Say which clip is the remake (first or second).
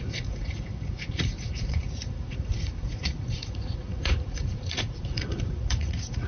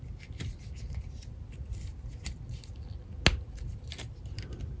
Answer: first